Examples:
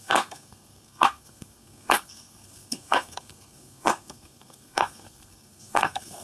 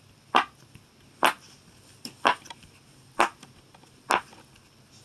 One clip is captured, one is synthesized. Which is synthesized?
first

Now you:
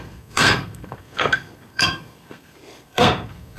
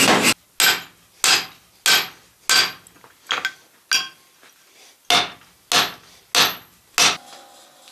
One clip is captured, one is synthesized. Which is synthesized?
first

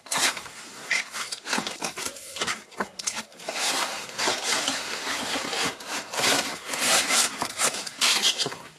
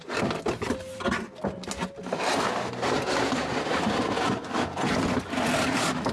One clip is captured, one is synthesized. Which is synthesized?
first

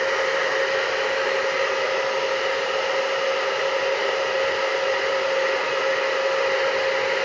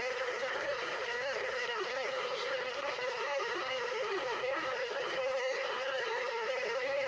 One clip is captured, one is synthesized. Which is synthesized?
second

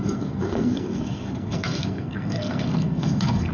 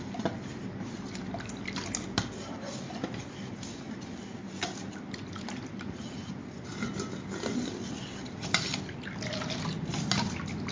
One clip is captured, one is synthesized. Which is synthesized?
first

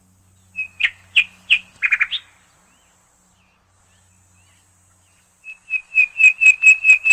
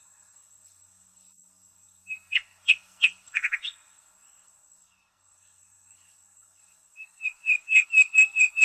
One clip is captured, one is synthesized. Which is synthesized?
second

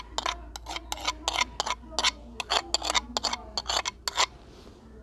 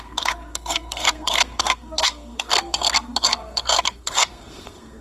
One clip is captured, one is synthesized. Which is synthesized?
second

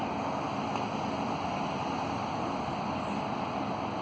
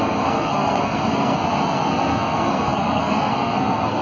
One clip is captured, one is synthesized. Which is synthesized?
second